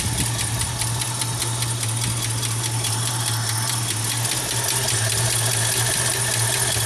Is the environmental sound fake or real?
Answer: real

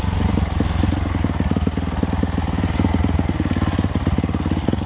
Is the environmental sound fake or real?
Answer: real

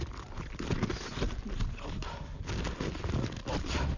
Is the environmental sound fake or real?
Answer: real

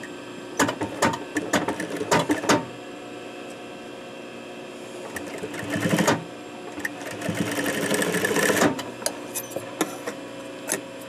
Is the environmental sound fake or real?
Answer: real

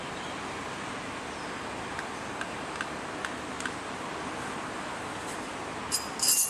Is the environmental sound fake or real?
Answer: real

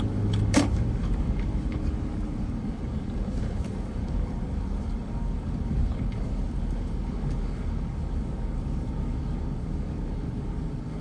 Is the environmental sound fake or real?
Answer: fake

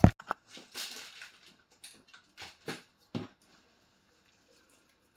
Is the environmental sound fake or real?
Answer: real